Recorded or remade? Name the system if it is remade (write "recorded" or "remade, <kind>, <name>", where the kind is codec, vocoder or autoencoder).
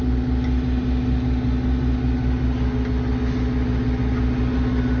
recorded